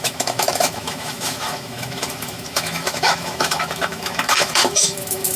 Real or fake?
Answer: fake